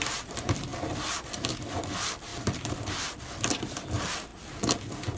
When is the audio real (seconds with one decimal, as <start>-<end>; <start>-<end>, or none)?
4.3-5.2